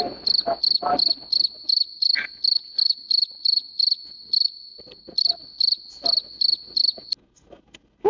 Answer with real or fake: real